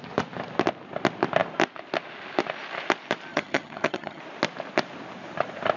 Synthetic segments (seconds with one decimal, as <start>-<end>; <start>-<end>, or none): 3.3-4.2